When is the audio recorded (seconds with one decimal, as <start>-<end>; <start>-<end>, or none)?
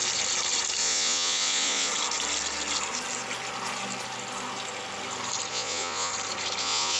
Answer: 0.0-0.8; 1.9-5.5; 6.1-6.6